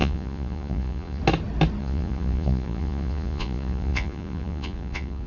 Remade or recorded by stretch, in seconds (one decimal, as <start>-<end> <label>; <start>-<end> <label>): 0.0-1.2 remade; 1.2-1.8 recorded; 1.8-5.3 remade